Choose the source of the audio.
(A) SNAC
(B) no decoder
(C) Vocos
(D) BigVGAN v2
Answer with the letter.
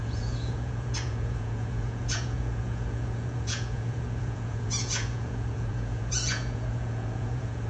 C